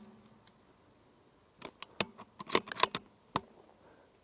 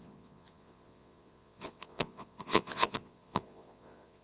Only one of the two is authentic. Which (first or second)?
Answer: first